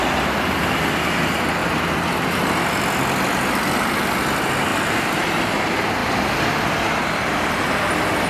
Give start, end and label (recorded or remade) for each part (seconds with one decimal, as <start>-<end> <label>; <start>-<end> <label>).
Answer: 0.0-8.3 recorded